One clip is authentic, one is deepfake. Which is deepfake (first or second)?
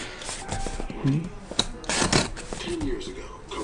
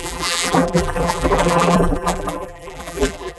second